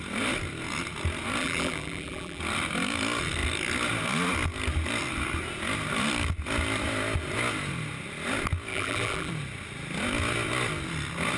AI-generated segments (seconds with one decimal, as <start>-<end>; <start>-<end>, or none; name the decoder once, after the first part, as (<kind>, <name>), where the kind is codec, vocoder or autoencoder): 1.4-2.4 (vocoder, BigVGAN v2); 8.7-9.3